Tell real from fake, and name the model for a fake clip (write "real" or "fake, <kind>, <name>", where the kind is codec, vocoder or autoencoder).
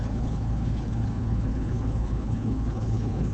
fake, codec, HILCodec